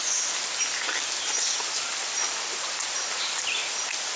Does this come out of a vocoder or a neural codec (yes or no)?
no